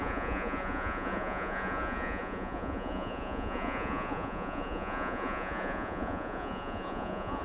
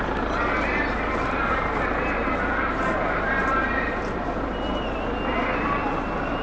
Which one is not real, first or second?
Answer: first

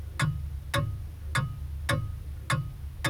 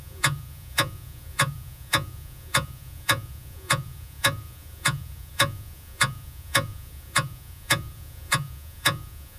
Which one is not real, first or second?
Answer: second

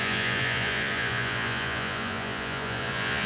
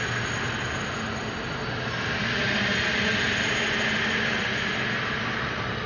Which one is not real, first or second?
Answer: first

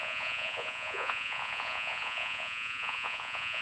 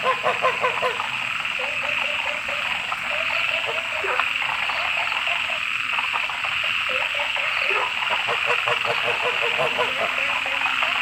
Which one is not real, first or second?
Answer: first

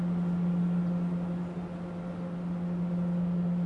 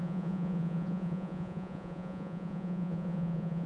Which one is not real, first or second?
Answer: second